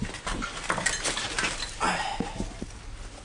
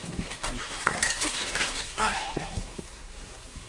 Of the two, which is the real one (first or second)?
first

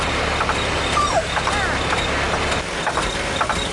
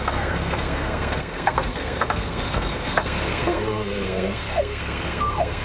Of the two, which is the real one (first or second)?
first